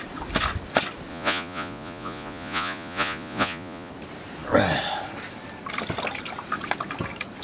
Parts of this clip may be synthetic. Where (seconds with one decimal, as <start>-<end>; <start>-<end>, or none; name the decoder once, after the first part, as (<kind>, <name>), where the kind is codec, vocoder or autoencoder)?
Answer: 1.1-3.9 (vocoder, Vocos)